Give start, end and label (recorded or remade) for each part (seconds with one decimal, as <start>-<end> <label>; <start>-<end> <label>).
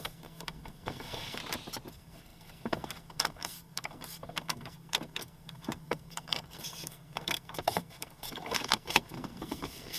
0.0-1.4 remade; 1.4-1.9 recorded; 1.9-10.0 remade